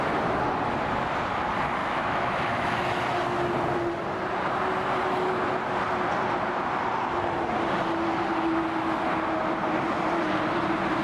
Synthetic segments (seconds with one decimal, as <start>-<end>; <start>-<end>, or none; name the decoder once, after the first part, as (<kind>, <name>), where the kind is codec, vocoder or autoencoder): 1.8-3.0 (autoencoder, DAC-VAE)